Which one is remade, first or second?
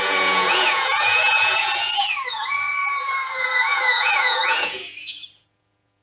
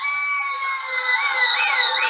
first